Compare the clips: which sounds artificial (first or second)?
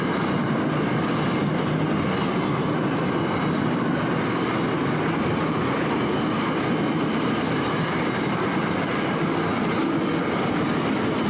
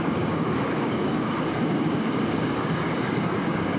second